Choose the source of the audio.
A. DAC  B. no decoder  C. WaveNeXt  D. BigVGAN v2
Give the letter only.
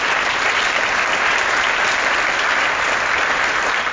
B